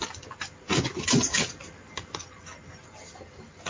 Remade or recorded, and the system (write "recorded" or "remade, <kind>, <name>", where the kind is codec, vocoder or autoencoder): recorded